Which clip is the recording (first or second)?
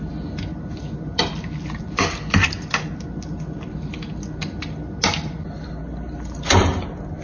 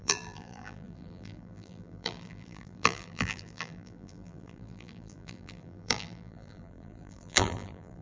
first